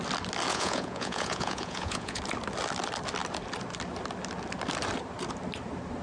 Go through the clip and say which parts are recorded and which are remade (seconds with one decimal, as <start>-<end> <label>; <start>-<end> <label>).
0.0-0.5 recorded; 0.5-2.2 remade; 2.2-6.0 recorded

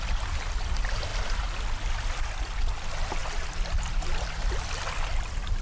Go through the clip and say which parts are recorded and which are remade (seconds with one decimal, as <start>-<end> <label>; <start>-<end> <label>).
0.0-5.6 recorded

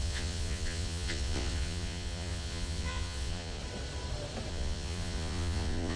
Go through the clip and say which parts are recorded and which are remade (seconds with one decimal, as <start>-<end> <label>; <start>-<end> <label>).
0.0-3.6 remade; 3.6-4.5 recorded; 4.5-6.0 remade

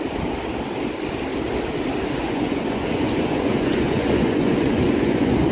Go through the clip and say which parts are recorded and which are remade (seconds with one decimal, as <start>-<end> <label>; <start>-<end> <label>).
0.0-2.2 recorded; 2.2-5.5 remade

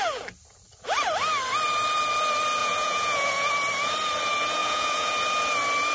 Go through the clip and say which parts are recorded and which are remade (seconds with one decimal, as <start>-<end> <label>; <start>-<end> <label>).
0.0-2.6 recorded; 2.6-3.5 remade; 3.5-4.6 recorded; 4.6-5.1 remade; 5.1-5.9 recorded

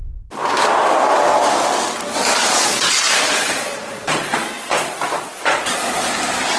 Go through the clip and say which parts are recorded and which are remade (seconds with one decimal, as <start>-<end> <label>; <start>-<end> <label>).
0.0-2.4 recorded; 2.4-6.1 remade; 6.1-6.6 recorded